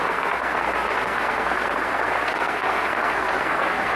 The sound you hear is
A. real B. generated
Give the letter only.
B